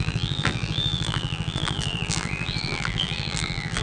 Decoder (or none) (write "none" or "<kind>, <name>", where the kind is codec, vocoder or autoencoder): vocoder, BigVGAN v2